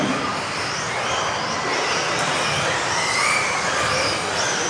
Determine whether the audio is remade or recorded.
recorded